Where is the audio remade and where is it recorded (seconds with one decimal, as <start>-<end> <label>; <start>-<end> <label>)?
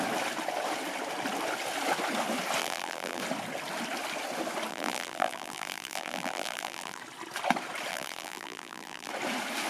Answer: 0.0-2.6 recorded; 2.6-3.2 remade; 3.2-4.7 recorded; 4.7-7.0 remade; 7.0-7.9 recorded; 7.9-9.1 remade; 9.1-9.7 recorded